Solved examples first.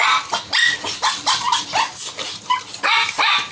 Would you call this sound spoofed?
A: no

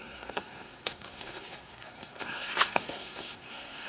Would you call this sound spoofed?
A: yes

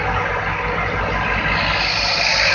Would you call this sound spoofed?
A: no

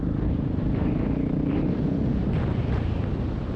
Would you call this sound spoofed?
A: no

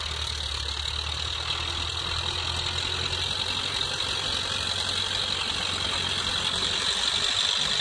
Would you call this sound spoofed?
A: no